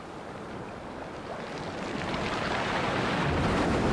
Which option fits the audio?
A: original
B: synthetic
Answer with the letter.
A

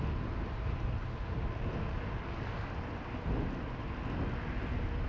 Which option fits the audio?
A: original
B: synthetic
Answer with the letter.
A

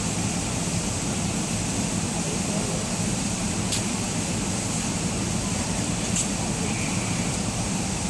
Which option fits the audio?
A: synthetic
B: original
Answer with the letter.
A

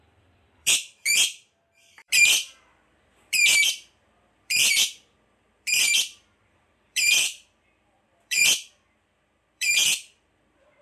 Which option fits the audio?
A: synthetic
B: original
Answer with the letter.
A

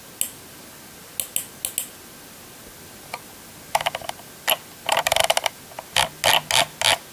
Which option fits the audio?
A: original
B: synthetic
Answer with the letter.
A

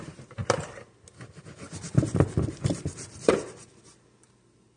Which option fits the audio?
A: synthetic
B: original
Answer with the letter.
A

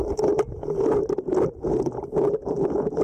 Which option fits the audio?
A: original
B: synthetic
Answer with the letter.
A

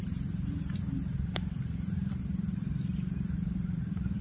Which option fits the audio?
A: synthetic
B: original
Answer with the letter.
A